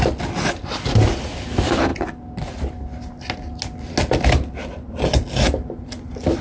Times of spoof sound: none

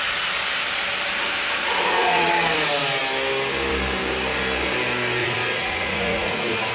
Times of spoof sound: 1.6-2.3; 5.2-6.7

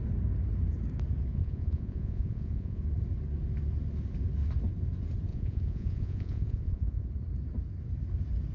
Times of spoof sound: 1.3-2.8; 5.3-7.1